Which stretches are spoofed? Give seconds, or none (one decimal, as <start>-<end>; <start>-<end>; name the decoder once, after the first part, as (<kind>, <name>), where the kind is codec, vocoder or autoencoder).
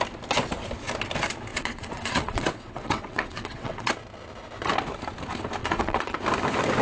1.5-3.9 (vocoder, WaveNeXt); 5.6-6.2